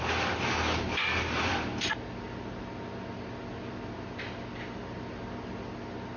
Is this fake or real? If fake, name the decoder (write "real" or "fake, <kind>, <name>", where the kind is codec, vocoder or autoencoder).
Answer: real